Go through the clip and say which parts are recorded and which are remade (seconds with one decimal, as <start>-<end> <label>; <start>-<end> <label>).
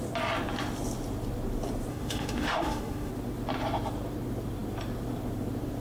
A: 0.0-1.9 recorded; 1.9-3.1 remade; 3.1-5.8 recorded